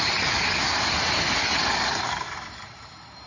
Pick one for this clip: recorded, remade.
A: recorded